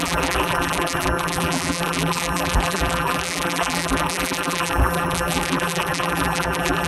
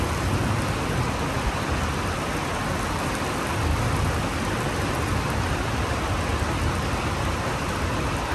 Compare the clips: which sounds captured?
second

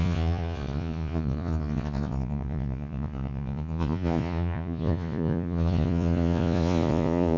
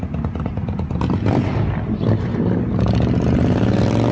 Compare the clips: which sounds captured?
second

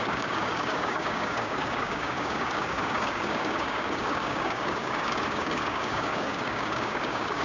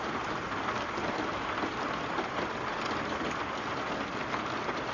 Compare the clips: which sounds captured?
second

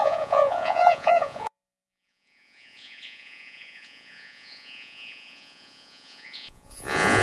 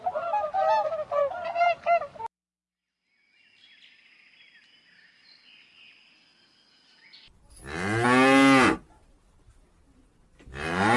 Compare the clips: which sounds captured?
second